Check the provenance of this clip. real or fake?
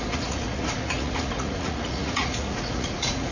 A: fake